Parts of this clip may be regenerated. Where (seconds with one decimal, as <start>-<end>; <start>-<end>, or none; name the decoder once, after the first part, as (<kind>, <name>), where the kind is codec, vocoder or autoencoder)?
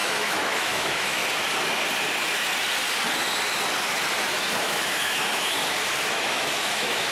0.0-1.2 (autoencoder, DAC-VAE); 4.6-5.6; 6.1-7.1